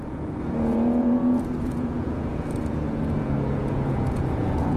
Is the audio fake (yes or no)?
yes